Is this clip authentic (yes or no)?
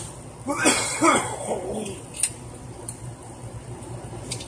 yes